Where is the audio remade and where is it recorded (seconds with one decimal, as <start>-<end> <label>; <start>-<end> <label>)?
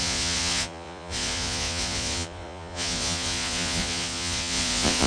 0.0-5.1 remade